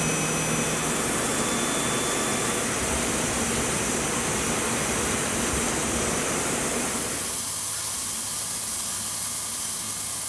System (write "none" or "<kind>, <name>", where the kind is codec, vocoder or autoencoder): none